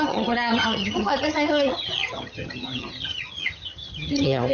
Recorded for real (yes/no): no